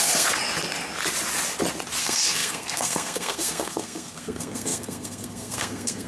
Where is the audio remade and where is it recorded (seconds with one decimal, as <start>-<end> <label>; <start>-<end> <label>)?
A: 0.0-0.4 remade; 0.4-2.0 recorded; 2.0-6.1 remade